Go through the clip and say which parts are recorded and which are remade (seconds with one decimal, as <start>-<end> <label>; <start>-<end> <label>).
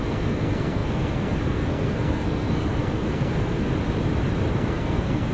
0.0-3.7 remade; 3.7-4.5 recorded; 4.5-5.3 remade